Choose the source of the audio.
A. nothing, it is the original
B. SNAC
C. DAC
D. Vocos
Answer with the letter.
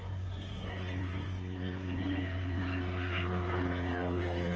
B